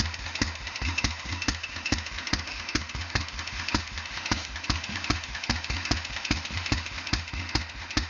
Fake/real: fake